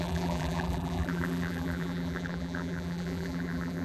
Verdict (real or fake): fake